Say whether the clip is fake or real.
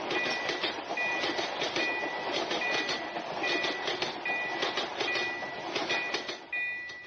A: real